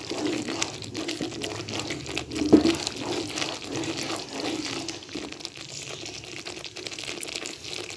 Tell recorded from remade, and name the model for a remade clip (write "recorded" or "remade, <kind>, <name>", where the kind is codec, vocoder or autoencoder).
recorded